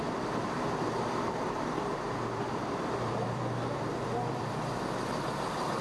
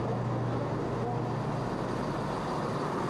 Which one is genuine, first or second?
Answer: second